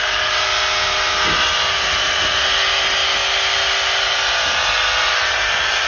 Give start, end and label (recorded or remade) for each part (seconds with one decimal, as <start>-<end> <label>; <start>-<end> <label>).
0.0-5.9 recorded